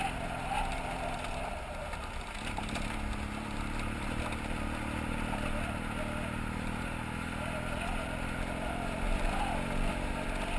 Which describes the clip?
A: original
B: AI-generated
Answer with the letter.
A